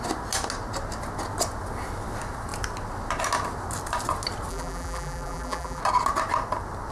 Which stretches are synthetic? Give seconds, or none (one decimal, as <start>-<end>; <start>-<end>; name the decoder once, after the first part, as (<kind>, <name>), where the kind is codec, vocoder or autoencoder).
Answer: 4.5-5.8 (vocoder, BigVGAN v2)